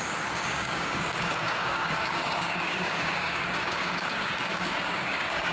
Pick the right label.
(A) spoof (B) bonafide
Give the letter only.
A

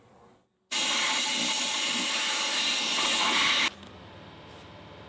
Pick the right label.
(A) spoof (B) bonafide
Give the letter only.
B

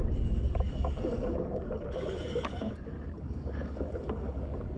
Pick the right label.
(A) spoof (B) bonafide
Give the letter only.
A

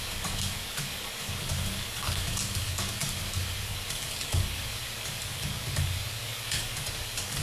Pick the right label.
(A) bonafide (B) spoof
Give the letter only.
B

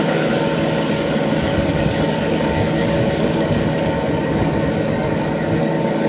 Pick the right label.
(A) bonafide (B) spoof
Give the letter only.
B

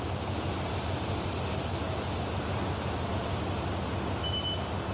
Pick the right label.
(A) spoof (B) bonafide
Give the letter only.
B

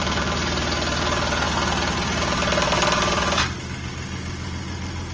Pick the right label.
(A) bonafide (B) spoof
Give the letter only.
A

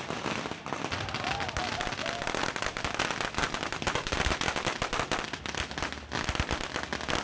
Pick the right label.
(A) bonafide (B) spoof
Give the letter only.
A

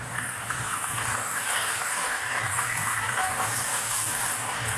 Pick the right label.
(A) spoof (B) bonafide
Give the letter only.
A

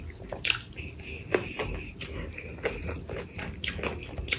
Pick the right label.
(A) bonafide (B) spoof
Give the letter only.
A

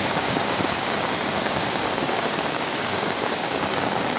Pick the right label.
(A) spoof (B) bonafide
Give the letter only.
A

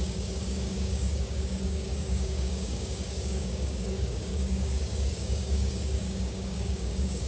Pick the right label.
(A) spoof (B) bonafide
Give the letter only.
A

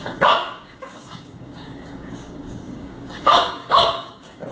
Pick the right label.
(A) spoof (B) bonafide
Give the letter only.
A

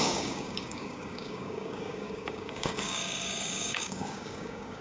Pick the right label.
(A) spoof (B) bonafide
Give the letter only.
A